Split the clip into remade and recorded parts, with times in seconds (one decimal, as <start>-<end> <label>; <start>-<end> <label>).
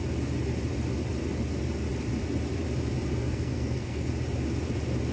0.0-3.2 recorded; 3.2-4.1 remade; 4.1-5.1 recorded